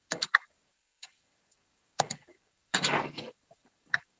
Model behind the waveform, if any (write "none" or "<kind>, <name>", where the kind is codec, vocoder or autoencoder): codec, DAC